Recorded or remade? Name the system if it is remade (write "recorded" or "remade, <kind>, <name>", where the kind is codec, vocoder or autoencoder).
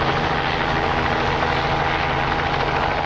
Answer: recorded